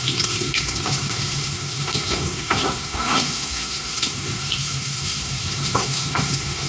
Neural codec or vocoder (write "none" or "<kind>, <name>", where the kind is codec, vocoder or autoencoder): codec, SNAC